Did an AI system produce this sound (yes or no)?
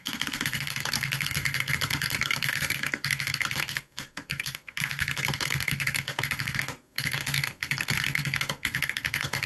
yes